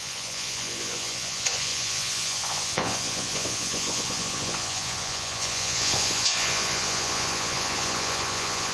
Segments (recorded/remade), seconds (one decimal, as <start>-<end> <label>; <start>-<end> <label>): 0.0-8.7 remade